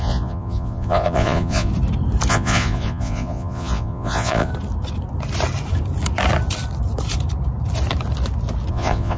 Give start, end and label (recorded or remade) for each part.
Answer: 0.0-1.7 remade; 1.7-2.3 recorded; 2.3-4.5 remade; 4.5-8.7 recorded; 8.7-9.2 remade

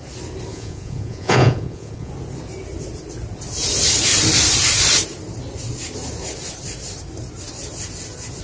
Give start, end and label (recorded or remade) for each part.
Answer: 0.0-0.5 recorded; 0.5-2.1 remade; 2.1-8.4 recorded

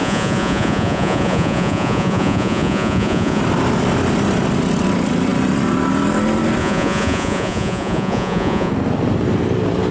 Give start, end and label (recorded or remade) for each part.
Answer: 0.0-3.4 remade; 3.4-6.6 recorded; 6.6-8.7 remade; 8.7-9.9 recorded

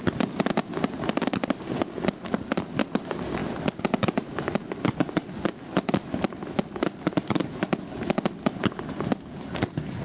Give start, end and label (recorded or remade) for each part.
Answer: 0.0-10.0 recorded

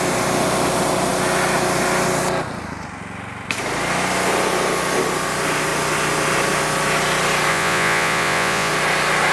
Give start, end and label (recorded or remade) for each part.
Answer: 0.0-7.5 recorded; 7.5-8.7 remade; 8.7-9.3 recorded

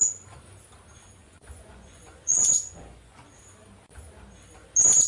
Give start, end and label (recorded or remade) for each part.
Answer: 0.0-1.2 recorded; 1.2-3.3 remade; 3.3-5.1 recorded